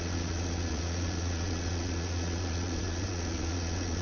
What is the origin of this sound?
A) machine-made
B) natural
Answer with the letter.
A